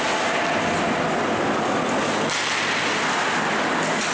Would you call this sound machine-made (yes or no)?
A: no